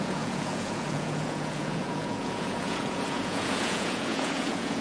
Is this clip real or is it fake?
fake